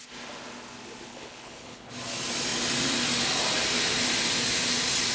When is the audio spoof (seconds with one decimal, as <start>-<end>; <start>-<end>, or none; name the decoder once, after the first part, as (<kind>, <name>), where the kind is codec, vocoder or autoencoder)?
1.1-1.9 (codec, HILCodec)

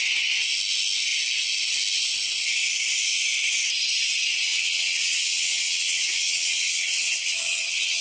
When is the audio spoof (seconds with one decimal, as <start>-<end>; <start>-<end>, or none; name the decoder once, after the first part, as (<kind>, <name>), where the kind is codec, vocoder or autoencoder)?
4.5-8.0 (vocoder, WaveNeXt)